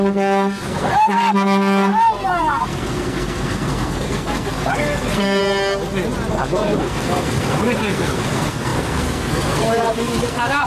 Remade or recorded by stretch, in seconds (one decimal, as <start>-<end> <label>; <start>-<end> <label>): 0.0-5.4 remade; 5.4-6.3 recorded; 6.3-10.7 remade